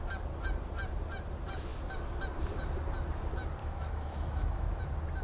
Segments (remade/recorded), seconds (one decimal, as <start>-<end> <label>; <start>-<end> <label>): 0.0-3.6 recorded; 3.6-4.8 remade; 4.8-5.2 recorded